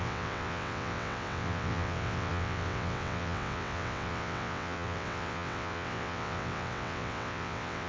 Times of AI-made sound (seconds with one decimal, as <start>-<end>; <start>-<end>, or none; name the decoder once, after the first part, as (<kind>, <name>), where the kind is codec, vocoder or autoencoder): 0.0-7.9 (vocoder, WaveNeXt)